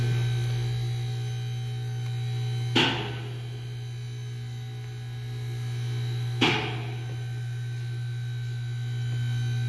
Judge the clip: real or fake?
real